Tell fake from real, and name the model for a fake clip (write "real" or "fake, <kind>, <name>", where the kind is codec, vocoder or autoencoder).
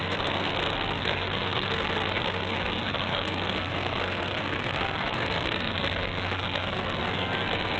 fake, codec, SNAC